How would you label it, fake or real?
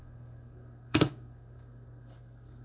fake